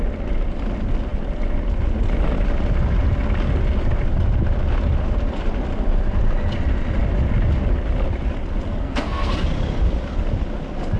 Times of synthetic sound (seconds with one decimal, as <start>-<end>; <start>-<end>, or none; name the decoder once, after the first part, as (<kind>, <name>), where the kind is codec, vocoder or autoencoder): 8.7-9.3 (codec, SNAC)